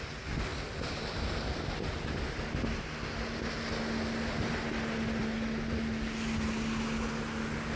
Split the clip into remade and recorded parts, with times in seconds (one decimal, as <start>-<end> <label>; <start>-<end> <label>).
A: 0.0-7.8 recorded